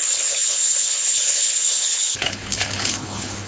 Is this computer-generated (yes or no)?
yes